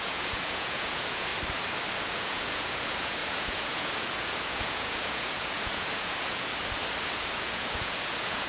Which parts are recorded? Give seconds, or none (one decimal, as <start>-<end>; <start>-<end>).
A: 1.3-2.1; 6.5-7.4

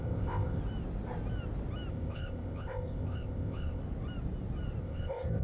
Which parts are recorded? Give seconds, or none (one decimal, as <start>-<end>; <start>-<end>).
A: 0.6-1.9; 3.8-4.8

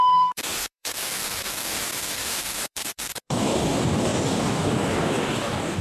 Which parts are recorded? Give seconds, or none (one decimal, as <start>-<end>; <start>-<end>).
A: none

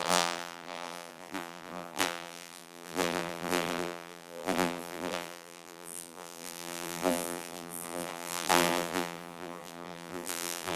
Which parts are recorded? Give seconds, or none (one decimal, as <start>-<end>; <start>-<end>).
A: none